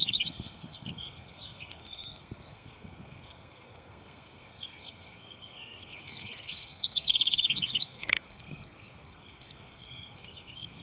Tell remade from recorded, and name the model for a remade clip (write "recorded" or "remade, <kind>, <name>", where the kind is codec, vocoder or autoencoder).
remade, codec, SNAC